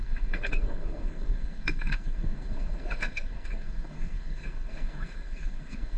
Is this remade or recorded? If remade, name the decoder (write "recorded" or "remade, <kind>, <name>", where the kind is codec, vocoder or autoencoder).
remade, codec, SNAC